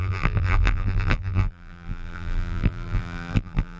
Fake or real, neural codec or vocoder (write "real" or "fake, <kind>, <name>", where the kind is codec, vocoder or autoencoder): fake, vocoder, BigVGAN v2